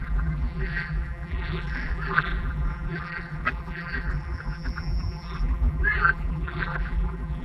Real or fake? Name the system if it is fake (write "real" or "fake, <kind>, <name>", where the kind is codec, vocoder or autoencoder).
fake, vocoder, BigVGAN v2